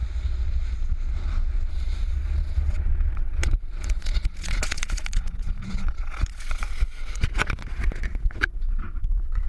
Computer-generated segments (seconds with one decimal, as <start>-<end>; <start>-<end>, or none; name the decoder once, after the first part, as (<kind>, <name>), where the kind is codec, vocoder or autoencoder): 1.7-9.5 (vocoder, Vocos)